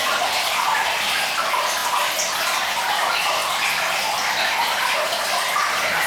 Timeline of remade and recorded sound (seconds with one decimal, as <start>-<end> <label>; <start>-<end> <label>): 0.0-6.1 recorded